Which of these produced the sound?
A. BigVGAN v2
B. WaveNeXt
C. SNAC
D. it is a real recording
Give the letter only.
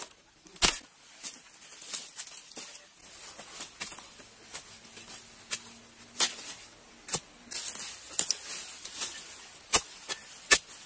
D